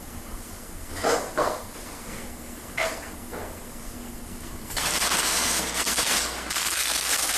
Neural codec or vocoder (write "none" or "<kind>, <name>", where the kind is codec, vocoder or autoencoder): codec, SNAC